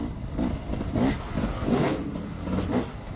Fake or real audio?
real